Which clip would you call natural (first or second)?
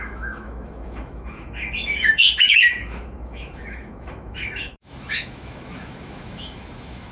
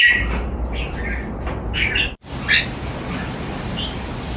second